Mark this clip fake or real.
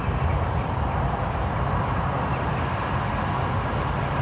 real